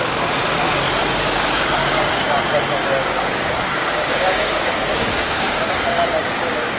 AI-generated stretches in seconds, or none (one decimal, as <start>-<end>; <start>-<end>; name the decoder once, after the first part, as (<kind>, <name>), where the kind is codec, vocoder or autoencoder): 1.0-2.3 (codec, DAC); 2.8-6.8